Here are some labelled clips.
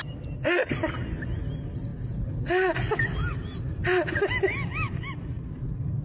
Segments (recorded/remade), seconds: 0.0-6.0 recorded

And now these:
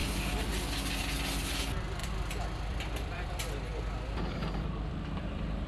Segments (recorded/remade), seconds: 0.0-2.0 recorded; 2.0-3.3 remade; 3.3-3.7 recorded; 3.7-5.7 remade

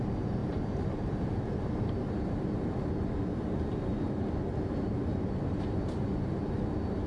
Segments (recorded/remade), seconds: 0.0-0.4 recorded; 0.4-1.5 remade; 1.5-5.1 recorded; 5.1-6.4 remade; 6.4-7.1 recorded

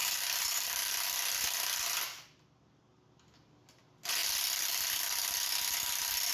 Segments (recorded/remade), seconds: 0.0-6.3 recorded